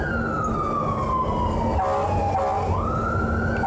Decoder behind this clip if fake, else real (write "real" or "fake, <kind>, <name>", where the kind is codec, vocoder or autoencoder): real